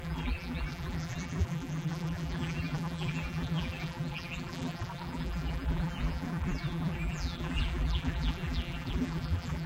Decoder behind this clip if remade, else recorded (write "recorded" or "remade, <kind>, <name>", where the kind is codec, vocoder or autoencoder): remade, vocoder, BigVGAN v2